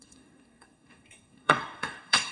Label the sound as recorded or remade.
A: remade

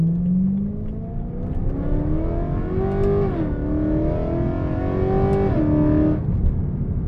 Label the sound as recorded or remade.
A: recorded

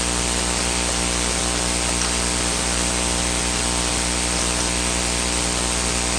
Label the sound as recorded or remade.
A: recorded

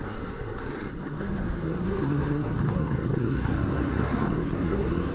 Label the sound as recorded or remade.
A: remade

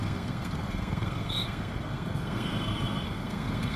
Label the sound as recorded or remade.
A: remade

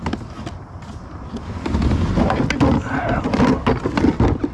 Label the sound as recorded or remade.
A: recorded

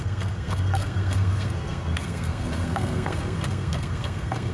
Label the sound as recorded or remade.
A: remade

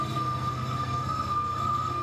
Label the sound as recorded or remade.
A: remade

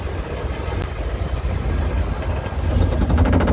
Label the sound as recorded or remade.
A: recorded